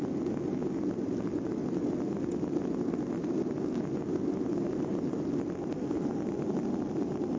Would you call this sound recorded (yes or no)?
yes